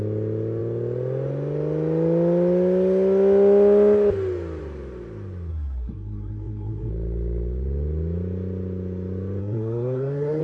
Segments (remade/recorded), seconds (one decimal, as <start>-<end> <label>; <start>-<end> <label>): 0.0-5.5 recorded; 5.5-6.9 remade; 6.9-9.4 recorded; 9.4-10.4 remade